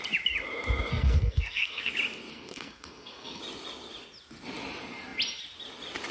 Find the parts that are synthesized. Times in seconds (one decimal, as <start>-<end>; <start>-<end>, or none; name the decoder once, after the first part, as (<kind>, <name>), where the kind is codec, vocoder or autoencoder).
0.9-1.9 (codec, SNAC); 2.3-3.4